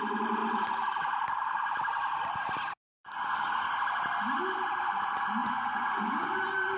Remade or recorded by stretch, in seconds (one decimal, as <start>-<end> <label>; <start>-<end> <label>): 0.0-5.4 recorded; 5.4-6.0 remade; 6.0-6.8 recorded